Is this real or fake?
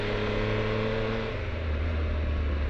real